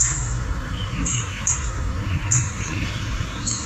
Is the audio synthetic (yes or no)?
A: yes